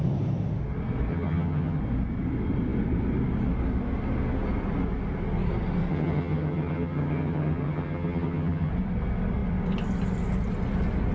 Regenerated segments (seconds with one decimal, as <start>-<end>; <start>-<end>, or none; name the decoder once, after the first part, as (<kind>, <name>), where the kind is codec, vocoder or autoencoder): 1.1-1.8 (vocoder, HiFi-GAN); 5.9-8.7